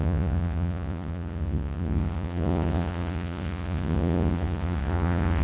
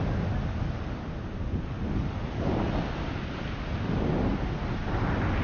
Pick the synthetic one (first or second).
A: first